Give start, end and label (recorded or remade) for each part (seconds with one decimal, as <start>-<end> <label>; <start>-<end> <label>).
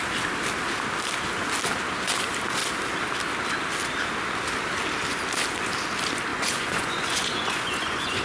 0.0-6.3 recorded; 6.3-8.2 remade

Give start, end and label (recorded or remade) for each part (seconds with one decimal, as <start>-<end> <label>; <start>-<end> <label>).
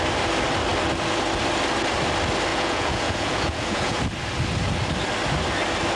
0.0-2.5 recorded; 2.5-4.0 remade; 4.0-6.0 recorded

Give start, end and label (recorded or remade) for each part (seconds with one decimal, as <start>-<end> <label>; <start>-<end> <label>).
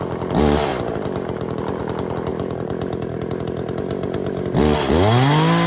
0.0-5.7 recorded